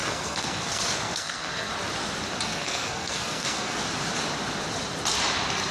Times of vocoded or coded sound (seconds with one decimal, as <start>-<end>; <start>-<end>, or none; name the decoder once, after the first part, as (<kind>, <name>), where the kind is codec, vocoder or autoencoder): 0.0-1.7 (codec, SNAC); 2.5-3.8